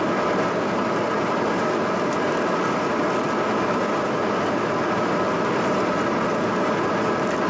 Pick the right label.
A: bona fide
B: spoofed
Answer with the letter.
A